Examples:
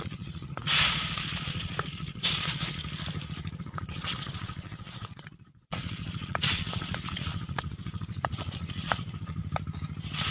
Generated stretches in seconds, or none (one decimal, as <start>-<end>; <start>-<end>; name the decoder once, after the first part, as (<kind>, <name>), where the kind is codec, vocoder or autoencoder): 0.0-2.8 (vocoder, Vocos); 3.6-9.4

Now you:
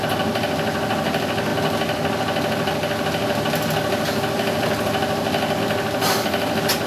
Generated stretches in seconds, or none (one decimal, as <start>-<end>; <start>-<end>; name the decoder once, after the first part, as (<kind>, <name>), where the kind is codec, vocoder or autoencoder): none

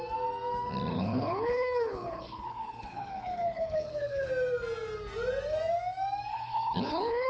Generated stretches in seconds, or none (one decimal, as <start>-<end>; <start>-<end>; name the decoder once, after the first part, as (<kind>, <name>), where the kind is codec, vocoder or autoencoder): 0.9-4.3 (codec, HILCodec); 6.3-7.3

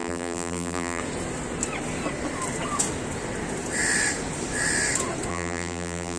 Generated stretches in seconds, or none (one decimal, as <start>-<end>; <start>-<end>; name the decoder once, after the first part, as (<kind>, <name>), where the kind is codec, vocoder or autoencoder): 0.0-1.0 (vocoder, BigVGAN v2); 5.3-6.2

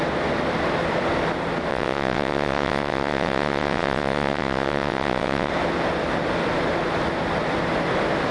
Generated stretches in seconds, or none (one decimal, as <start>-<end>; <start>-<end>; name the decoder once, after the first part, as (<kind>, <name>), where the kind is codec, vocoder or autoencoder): 1.7-5.5 (vocoder, WaveNeXt)